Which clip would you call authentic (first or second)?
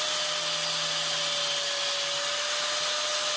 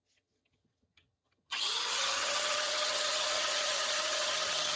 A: first